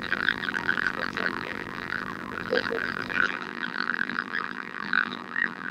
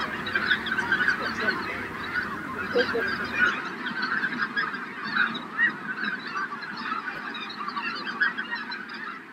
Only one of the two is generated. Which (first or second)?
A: first